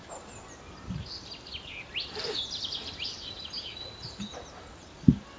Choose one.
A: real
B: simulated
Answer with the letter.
A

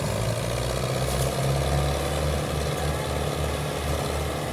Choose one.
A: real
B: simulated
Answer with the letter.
A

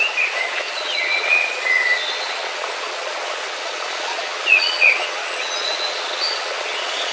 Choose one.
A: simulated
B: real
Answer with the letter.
A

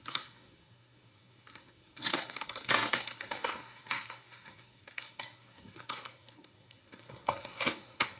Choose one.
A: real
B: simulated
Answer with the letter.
B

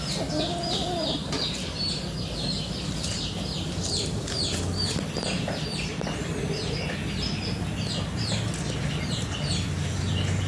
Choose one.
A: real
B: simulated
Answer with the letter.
A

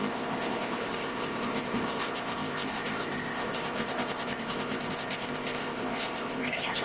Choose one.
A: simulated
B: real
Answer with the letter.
A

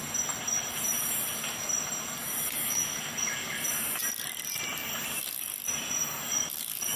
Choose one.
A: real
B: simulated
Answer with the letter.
A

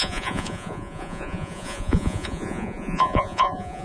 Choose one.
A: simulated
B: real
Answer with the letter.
A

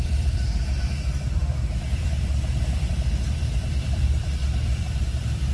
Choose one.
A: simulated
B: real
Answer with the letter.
A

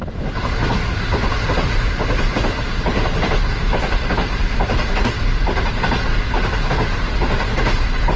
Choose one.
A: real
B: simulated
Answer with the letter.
A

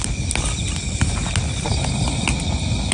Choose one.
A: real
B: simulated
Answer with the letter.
A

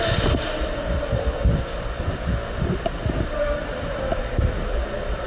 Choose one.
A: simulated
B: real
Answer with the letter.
B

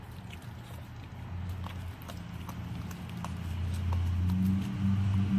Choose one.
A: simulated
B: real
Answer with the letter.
B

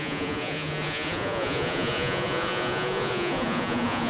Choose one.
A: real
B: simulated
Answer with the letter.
B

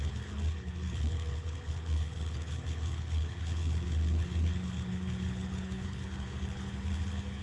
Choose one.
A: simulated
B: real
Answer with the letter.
A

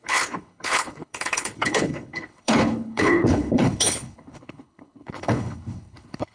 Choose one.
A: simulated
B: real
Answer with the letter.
A